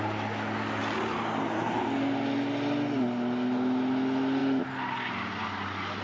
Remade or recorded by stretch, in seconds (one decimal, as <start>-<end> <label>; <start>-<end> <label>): 0.0-6.0 recorded